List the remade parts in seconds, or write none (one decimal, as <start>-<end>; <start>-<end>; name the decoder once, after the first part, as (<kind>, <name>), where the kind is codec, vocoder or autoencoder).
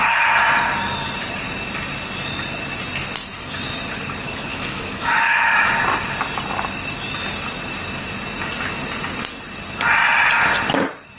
3.2-3.8 (autoencoder, DAC-VAE); 4.5-5.7